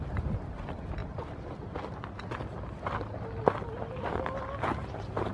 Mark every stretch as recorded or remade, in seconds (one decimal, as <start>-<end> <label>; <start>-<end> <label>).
0.0-5.3 recorded